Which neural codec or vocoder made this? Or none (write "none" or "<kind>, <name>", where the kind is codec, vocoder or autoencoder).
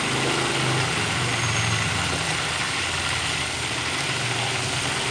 none